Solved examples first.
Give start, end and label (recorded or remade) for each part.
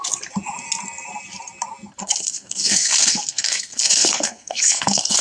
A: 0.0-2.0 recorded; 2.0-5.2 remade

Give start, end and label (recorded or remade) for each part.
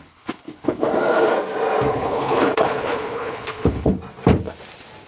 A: 0.0-0.9 remade; 0.9-1.9 recorded; 1.9-3.9 remade; 3.9-5.1 recorded